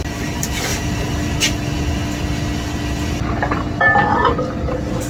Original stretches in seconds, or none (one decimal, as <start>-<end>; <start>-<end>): 0.0-5.1